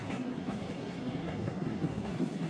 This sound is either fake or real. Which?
fake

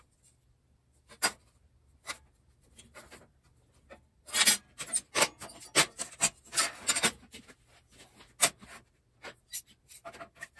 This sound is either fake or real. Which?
real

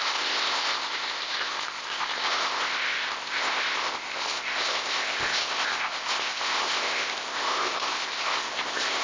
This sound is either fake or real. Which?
fake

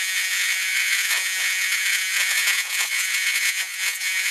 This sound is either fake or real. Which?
fake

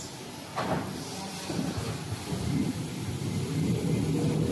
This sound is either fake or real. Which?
real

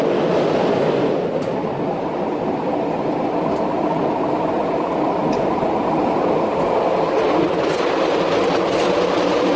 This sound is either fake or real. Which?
real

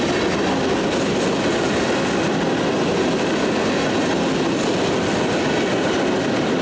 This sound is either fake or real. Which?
real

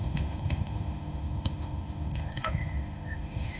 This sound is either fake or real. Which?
fake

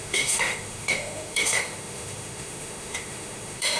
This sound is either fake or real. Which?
fake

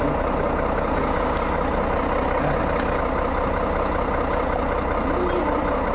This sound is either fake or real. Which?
real